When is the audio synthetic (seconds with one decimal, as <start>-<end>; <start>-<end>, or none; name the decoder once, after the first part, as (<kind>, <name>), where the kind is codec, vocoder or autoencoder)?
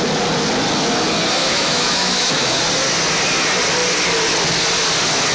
1.4-2.6 (autoencoder, DAC-VAE)